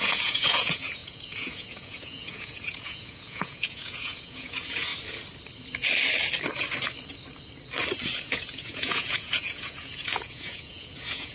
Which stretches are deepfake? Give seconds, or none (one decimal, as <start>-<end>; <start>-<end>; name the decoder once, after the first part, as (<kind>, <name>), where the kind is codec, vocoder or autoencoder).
0.0-4.9 (vocoder, Vocos); 8.2-11.3